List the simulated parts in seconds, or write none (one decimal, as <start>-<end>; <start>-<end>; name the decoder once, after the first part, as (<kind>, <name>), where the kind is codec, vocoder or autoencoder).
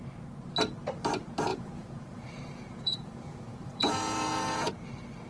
1.5-4.7 (vocoder, Vocos)